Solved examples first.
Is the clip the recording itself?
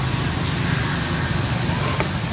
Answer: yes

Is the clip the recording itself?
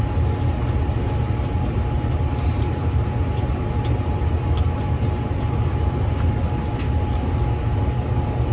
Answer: yes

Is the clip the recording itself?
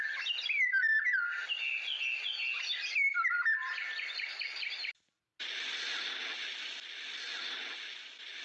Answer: yes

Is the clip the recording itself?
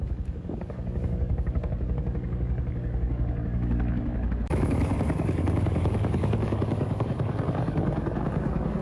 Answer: no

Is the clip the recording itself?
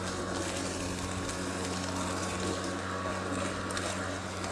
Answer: yes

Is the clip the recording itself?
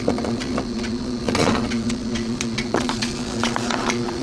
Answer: no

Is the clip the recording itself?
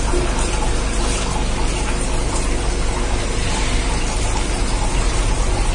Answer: yes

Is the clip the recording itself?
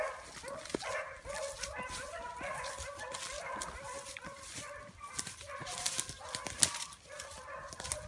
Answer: yes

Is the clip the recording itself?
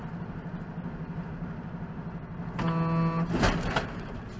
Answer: yes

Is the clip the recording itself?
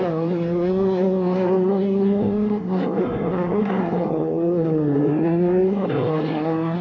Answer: no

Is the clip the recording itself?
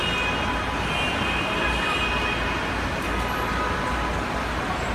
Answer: yes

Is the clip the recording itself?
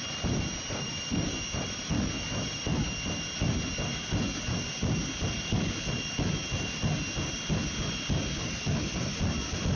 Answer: yes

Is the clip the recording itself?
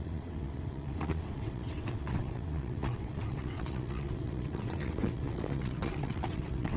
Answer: no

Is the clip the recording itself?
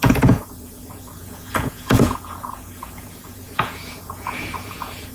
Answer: no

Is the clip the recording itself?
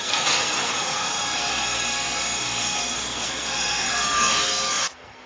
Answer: no